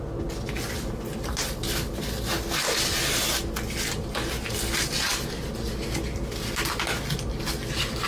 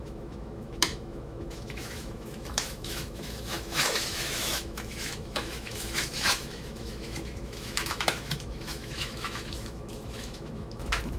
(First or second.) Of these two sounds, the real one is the first